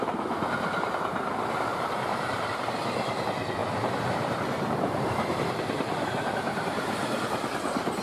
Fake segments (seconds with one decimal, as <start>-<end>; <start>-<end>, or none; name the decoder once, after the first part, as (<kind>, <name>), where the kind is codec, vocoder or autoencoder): 1.7-2.6 (vocoder, BigVGAN v2); 3.6-5.5; 5.9-8.0